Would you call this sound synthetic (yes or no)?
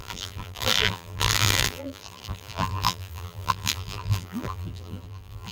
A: yes